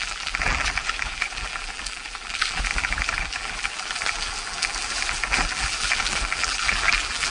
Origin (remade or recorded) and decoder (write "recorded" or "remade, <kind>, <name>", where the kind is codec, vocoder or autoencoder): remade, vocoder, BigVGAN v2